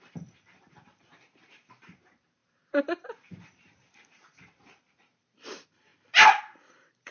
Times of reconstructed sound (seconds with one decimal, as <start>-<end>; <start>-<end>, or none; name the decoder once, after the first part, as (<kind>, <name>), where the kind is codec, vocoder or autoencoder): 0.0-5.9 (vocoder, BigVGAN v2); 6.4-7.1